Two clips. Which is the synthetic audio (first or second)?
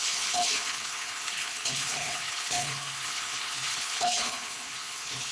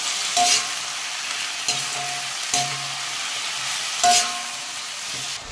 first